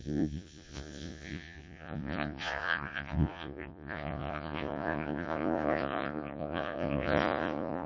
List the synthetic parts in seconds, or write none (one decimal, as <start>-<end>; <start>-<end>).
0.0-7.9